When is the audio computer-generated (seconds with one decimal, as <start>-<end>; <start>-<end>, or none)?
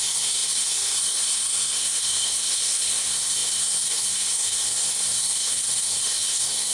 0.0-6.7